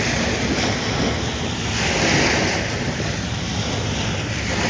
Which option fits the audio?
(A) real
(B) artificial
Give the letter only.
A